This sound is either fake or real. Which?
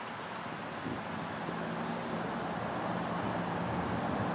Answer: real